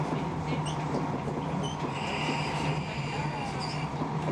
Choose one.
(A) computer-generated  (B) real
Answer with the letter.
B